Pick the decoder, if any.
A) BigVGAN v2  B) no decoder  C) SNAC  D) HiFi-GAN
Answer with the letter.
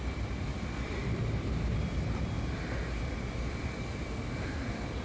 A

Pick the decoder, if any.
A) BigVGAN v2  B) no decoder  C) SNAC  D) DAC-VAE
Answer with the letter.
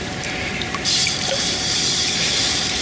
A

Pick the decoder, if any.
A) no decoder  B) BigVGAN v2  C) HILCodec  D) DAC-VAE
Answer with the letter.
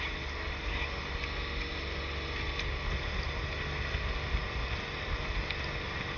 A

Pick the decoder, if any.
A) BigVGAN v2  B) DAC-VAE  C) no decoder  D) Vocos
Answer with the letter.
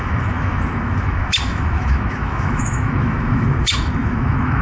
B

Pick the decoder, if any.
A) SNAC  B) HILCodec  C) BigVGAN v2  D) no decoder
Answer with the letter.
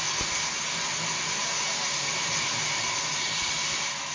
D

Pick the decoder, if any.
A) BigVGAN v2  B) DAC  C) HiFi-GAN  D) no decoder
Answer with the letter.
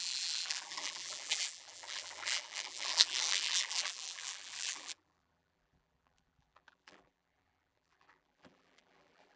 A